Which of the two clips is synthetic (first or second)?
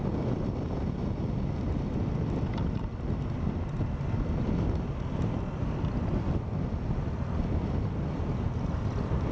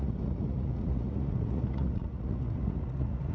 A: second